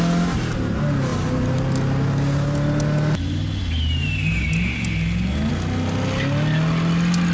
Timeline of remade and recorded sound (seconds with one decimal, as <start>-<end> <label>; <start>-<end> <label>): 0.0-7.3 recorded